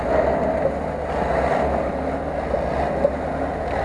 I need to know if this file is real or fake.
real